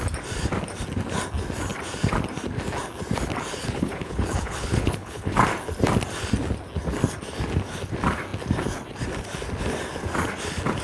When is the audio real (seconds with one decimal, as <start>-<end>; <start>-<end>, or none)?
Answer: 0.0-3.6; 5.3-10.8

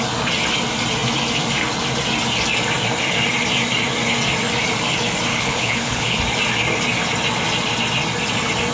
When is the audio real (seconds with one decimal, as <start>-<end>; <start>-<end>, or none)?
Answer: 0.0-5.3; 6.2-8.7

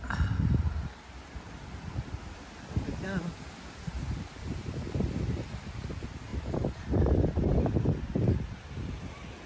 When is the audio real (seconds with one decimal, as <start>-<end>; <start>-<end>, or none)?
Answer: 0.0-9.5

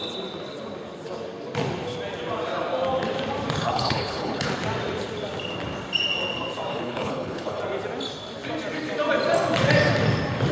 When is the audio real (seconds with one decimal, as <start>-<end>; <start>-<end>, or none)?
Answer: 0.0-3.6; 4.5-6.7; 7.6-10.5

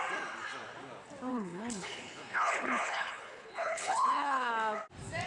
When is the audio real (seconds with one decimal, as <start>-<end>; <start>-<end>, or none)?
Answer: 0.0-1.3; 4.5-5.3

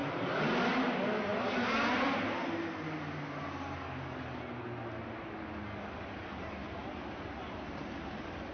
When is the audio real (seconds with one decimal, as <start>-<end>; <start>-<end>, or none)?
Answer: 0.0-8.5